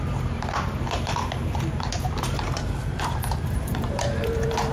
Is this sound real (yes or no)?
no